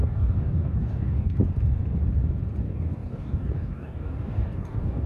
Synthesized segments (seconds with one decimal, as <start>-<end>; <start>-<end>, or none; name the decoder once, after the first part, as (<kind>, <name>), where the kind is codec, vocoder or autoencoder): 0.0-1.4 (codec, DAC); 2.6-5.1